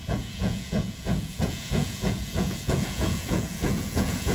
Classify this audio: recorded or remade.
remade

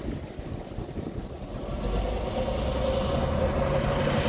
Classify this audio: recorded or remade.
recorded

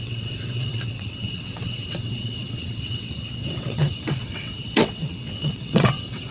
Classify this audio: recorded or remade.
remade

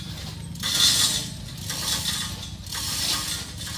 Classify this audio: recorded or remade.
recorded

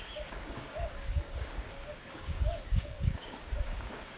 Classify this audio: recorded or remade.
remade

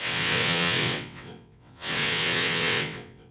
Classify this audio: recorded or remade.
remade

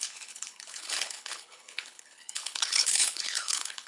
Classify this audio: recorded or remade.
remade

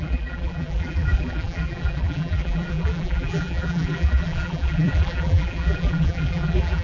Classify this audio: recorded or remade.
remade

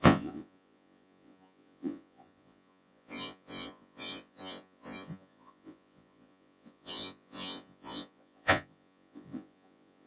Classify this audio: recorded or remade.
remade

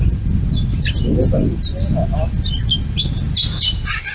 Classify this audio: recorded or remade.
recorded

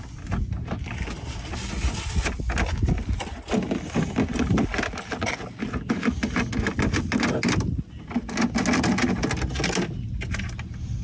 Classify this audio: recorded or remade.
recorded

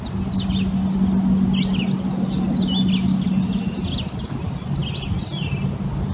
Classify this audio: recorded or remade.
recorded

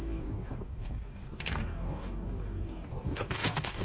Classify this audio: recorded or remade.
remade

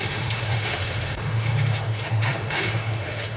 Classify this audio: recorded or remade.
remade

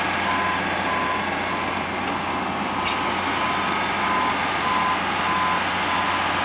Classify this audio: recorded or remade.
recorded